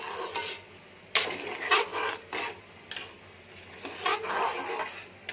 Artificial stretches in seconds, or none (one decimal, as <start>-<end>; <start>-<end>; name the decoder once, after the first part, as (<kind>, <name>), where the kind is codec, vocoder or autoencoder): none